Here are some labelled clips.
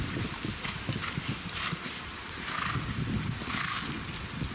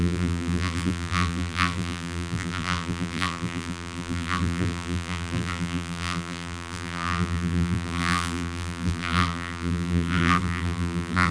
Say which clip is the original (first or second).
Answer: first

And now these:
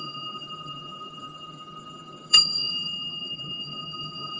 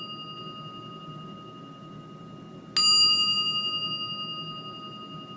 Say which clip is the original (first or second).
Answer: second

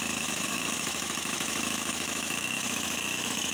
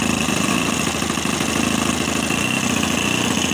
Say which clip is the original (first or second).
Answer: second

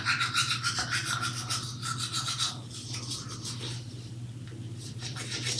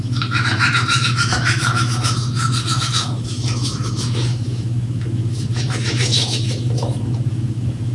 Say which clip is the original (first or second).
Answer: first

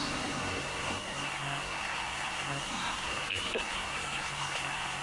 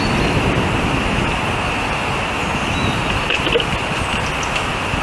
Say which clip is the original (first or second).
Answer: second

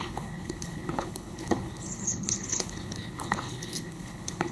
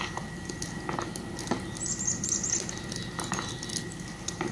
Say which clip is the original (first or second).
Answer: second